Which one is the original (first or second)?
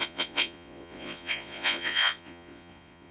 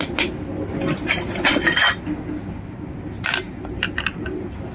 second